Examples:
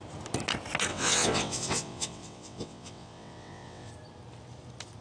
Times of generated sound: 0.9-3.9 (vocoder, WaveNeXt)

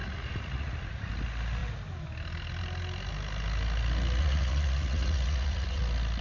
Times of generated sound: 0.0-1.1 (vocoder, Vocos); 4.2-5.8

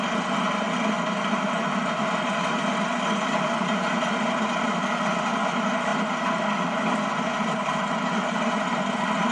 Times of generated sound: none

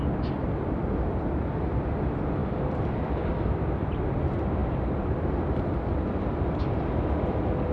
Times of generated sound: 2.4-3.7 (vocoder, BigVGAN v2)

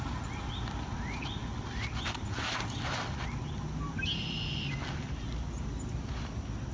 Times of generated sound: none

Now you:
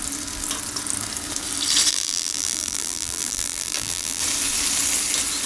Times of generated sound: 1.9-4.2 (vocoder, BigVGAN v2)

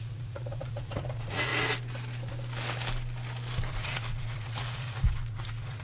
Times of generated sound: 0.0-1.5 (vocoder, Vocos); 3.7-5.8

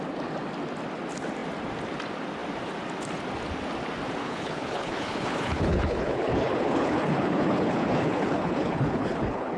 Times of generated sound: 4.2-9.6 (codec, HILCodec)